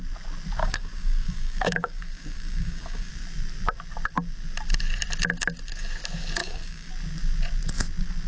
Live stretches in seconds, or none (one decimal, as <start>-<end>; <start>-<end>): 0.0-0.6; 3.1-6.4; 6.9-8.3